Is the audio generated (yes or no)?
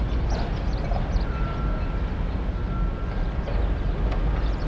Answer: no